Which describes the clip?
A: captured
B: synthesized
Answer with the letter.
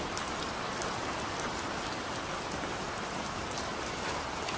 A